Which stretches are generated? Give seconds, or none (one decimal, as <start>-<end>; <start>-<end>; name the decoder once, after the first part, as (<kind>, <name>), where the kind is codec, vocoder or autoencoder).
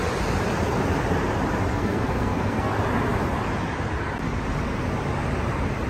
1.7-2.7 (codec, SNAC)